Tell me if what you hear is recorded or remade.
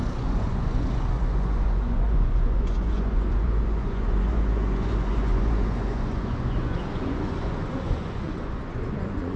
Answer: remade